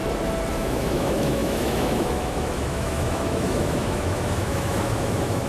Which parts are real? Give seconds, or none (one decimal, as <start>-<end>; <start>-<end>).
0.0-0.5

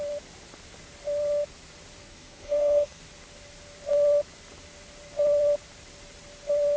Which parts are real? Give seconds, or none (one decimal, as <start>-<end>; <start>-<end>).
0.0-2.0; 3.0-6.8